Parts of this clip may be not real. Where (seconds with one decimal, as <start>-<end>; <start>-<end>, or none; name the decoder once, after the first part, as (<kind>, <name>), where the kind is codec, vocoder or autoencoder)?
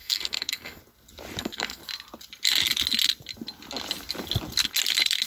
0.0-0.8 (codec, SNAC); 1.4-1.8